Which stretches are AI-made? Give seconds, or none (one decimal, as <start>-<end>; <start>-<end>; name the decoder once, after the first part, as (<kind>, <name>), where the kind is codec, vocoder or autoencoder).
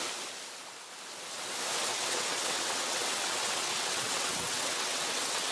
1.9-5.5 (vocoder, WaveNeXt)